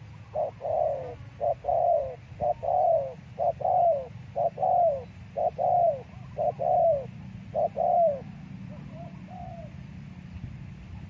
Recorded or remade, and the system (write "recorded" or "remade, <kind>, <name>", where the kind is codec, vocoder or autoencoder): recorded